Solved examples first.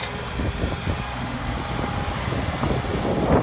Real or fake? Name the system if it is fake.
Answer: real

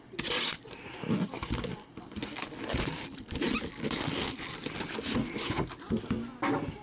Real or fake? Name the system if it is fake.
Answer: real